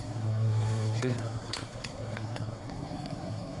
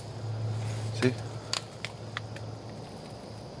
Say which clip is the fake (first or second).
first